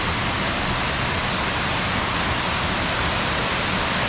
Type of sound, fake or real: real